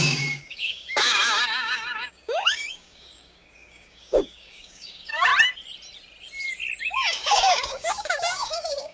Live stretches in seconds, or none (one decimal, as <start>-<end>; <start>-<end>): 5.3-6.8